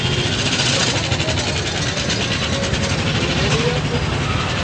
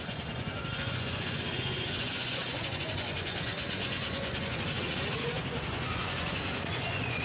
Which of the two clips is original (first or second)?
first